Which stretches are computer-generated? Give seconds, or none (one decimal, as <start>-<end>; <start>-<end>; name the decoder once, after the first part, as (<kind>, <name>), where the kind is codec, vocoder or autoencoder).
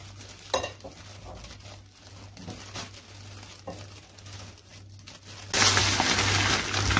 none